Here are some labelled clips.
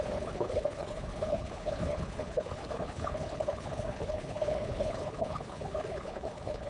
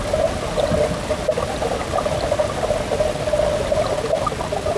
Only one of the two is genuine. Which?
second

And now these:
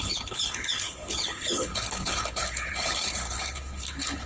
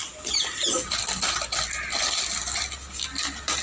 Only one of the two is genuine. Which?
second